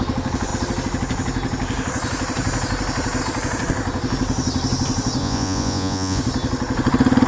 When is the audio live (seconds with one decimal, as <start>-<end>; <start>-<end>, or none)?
0.0-5.2; 6.2-7.3